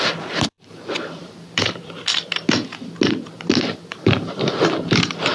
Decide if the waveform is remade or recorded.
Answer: remade